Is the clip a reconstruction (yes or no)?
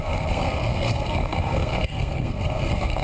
yes